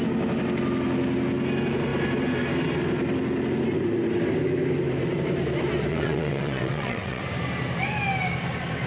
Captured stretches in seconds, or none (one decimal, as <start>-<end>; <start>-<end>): 0.0-5.9; 7.2-8.9